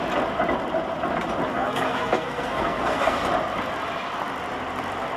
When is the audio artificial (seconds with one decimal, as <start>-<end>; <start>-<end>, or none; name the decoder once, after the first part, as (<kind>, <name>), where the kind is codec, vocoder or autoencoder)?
1.5-3.2 (codec, SNAC)